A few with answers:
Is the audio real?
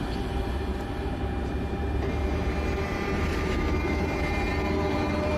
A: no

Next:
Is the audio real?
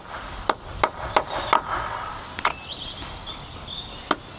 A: yes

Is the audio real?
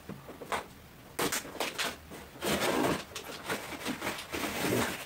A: yes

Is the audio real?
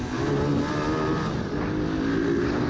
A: yes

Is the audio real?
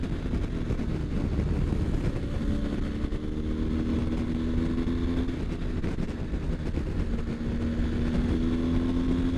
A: yes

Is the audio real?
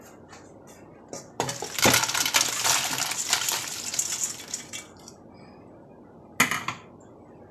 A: yes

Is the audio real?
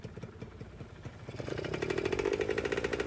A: yes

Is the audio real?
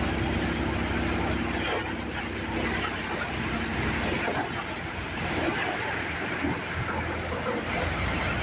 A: yes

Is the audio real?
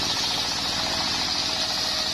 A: yes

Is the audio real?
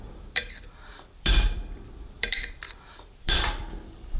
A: no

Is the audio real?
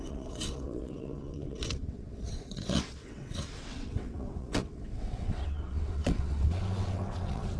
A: no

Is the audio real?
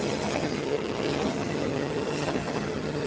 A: no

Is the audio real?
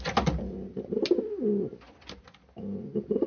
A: yes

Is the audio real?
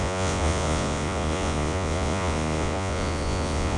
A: no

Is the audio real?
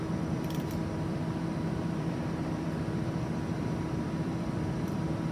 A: no